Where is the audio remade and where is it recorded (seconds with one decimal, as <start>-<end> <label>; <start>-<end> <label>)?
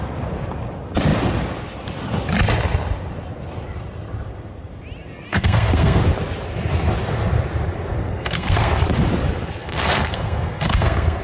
0.0-5.3 recorded; 5.3-6.0 remade; 6.0-7.9 recorded; 7.9-8.7 remade; 8.7-9.6 recorded; 9.6-11.2 remade